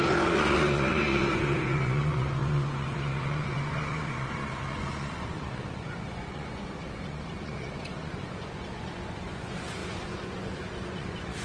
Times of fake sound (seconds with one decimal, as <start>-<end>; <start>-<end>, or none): 0.0-11.4